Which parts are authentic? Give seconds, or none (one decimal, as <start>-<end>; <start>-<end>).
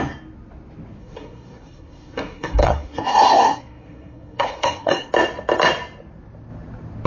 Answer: 0.0-1.0; 5.1-7.1